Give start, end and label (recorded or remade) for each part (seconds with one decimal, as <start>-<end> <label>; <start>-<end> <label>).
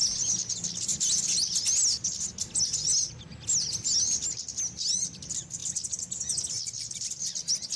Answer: 0.0-7.8 recorded